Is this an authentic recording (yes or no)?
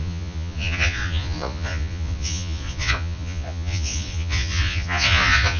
no